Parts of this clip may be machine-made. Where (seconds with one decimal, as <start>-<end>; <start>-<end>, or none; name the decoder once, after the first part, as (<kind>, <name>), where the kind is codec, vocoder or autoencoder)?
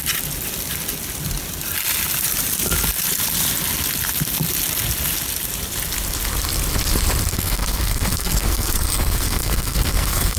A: 7.3-10.4 (codec, SNAC)